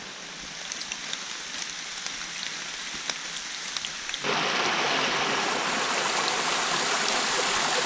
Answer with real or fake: real